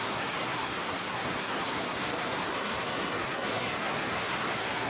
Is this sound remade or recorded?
remade